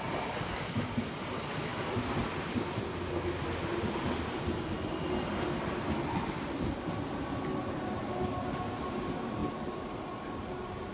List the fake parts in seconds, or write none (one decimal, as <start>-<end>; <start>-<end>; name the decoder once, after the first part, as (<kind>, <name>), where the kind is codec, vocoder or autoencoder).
1.7-3.1 (vocoder, BigVGAN v2); 9.4-10.0